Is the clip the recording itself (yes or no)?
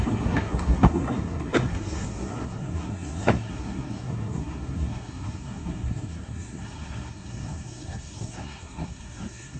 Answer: no